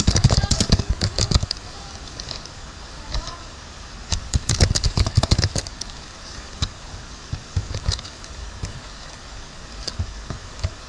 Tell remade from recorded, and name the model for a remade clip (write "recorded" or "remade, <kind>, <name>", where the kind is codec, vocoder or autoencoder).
remade, codec, DAC